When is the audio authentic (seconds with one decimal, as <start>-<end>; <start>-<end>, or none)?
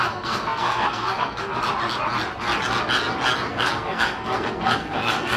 1.6-3.5